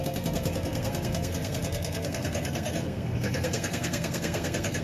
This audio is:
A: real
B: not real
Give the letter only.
B